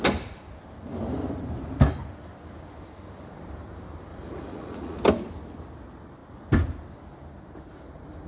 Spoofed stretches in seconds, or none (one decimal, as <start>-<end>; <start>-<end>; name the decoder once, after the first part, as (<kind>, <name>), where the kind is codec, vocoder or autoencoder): 4.1-5.0 (vocoder, Vocos)